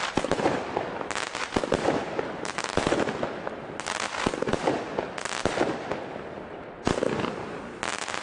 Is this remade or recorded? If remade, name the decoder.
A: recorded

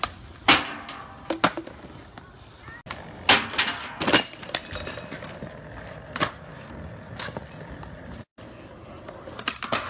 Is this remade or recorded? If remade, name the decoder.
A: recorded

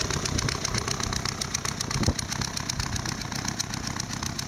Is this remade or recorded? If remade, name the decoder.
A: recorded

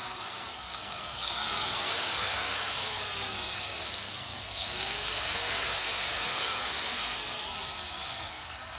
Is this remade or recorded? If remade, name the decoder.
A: remade, codec, SNAC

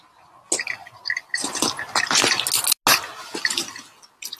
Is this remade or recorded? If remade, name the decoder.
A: recorded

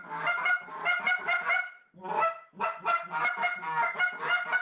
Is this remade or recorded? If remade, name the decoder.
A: recorded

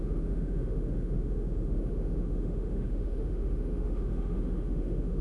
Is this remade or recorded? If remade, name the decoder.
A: remade, autoencoder, DAC-VAE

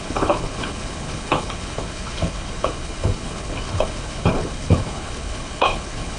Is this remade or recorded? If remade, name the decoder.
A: remade, codec, HILCodec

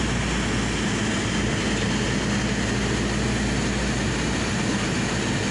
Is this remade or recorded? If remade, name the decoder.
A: recorded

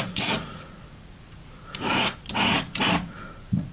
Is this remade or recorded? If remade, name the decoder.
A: remade, vocoder, Vocos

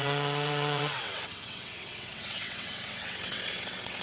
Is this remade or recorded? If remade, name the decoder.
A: remade, vocoder, WaveNeXt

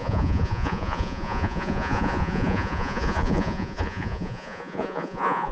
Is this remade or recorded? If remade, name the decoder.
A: remade, vocoder, Vocos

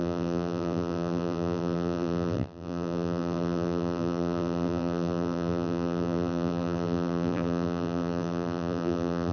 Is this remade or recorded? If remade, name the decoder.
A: remade, vocoder, BigVGAN v2